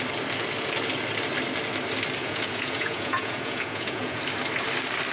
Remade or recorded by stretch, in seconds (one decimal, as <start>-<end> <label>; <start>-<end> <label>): 0.0-2.2 recorded; 2.2-4.2 remade; 4.2-5.1 recorded